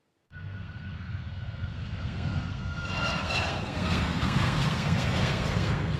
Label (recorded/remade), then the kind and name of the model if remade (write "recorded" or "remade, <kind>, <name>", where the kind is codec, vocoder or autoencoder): remade, codec, SNAC